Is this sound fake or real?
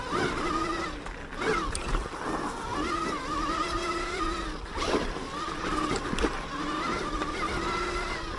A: real